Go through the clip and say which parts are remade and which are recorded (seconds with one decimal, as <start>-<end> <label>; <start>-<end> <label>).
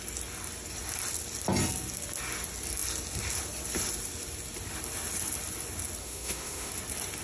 0.0-6.0 recorded; 6.0-6.7 remade; 6.7-7.2 recorded